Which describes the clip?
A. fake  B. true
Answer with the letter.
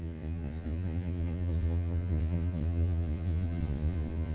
A